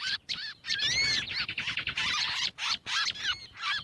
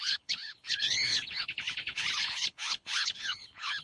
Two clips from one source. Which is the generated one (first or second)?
second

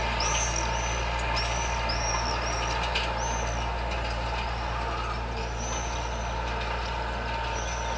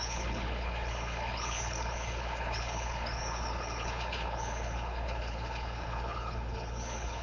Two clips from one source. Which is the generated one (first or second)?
second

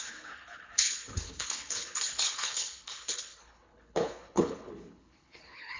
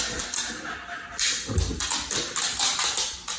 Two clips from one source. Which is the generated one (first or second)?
first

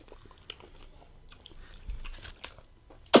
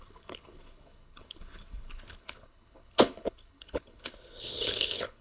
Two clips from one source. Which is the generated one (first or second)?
second